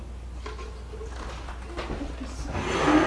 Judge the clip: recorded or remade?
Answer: recorded